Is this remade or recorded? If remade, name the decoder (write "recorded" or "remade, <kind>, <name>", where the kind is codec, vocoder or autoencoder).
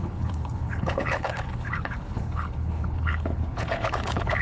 remade, codec, HILCodec